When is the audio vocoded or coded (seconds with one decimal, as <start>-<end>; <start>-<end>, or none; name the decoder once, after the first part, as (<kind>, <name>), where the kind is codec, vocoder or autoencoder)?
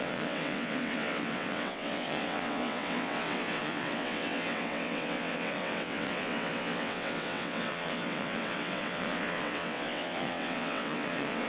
0.0-11.5 (vocoder, WaveNeXt)